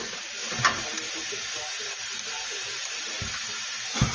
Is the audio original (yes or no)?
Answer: yes